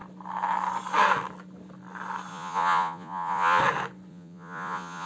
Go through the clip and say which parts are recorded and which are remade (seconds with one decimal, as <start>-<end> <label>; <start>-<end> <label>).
0.0-2.3 recorded; 2.3-3.6 remade; 3.6-4.1 recorded; 4.1-5.1 remade